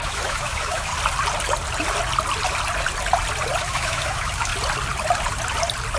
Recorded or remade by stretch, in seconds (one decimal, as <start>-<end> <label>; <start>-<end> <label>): 0.0-0.9 remade; 0.9-3.6 recorded; 3.6-4.5 remade; 4.5-6.0 recorded

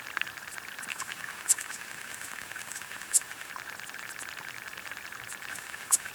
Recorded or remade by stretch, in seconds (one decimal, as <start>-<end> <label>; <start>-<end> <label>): 0.0-0.9 recorded; 0.9-3.5 remade; 3.5-5.5 recorded; 5.5-6.1 remade

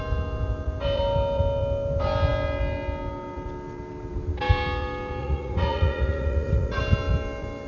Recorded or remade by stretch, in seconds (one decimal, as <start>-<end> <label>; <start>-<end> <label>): 0.0-5.2 recorded; 5.2-6.8 remade; 6.8-7.7 recorded

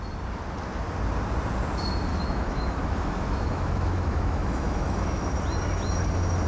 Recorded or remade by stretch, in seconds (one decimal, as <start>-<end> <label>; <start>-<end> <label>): 0.0-2.1 recorded; 2.1-5.2 remade; 5.2-6.5 recorded

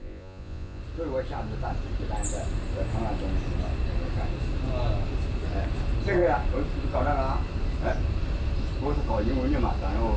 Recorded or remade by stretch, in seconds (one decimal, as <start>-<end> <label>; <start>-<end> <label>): 0.0-0.8 remade; 0.8-10.2 recorded